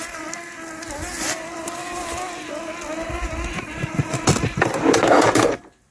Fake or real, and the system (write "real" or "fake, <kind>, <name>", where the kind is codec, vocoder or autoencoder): real